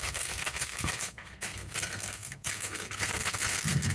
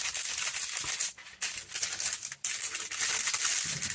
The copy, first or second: first